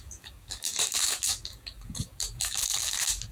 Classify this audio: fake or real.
fake